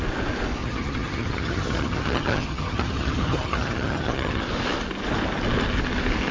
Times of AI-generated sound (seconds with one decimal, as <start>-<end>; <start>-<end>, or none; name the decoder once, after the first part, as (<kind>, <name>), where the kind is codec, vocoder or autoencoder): 0.6-4.4 (vocoder, HiFi-GAN)